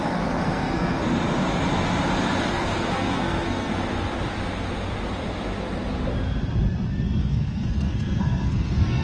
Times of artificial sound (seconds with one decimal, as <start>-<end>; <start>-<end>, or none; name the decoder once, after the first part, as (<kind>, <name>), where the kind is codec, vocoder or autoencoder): 0.0-1.0 (codec, SNAC); 2.5-3.7; 7.2-9.0